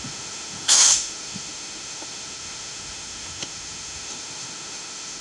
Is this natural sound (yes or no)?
no